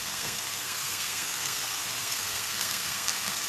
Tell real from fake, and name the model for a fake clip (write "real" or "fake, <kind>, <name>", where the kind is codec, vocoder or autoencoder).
fake, codec, SNAC